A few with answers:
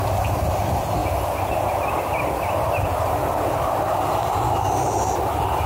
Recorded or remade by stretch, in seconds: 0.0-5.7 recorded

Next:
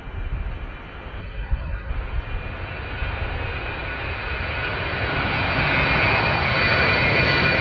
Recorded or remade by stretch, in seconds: 0.0-1.2 recorded; 1.2-1.9 remade; 1.9-7.6 recorded

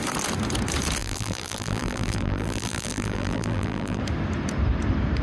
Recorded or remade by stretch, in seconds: 0.0-1.0 recorded; 1.0-4.0 remade; 4.0-5.2 recorded